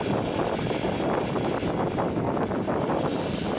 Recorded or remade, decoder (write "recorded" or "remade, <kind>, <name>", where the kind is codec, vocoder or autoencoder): recorded